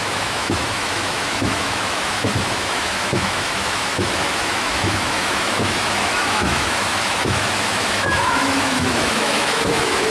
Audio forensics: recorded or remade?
remade